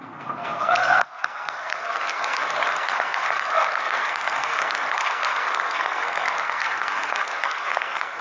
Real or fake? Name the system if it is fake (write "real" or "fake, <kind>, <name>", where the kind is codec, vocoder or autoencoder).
fake, codec, SNAC